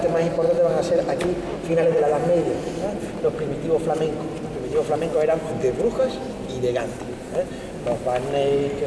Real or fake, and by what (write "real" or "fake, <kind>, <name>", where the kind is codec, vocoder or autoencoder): real